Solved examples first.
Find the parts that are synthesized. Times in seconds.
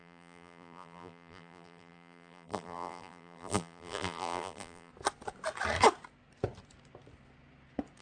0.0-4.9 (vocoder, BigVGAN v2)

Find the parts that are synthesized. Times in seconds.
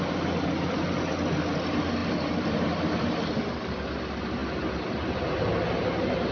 2.0-3.3 (vocoder, BigVGAN v2)